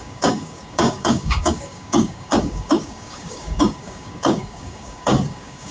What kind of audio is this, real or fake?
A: fake